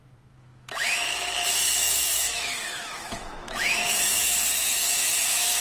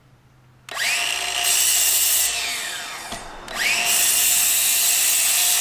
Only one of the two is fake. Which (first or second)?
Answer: first